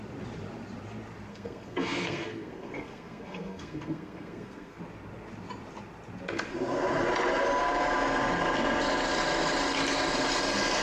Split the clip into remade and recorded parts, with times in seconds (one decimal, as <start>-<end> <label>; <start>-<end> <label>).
0.0-1.3 recorded; 1.3-4.8 remade; 4.8-10.8 recorded